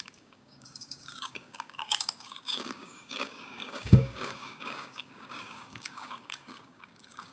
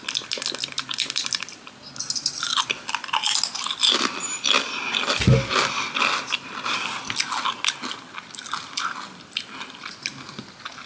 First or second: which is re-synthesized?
first